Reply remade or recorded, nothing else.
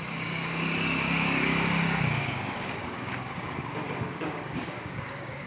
remade